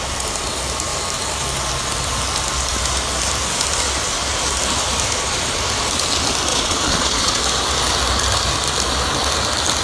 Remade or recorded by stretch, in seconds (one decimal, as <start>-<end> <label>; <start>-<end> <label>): 0.0-6.5 recorded; 6.5-7.4 remade; 7.4-9.8 recorded